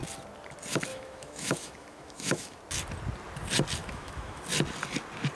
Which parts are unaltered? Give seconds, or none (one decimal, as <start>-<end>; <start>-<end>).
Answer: 0.0-0.9; 2.6-3.8; 4.4-5.4